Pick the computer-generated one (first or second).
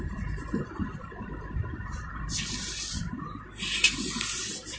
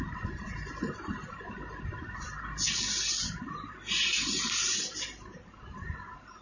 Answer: first